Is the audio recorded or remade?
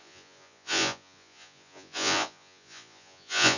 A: remade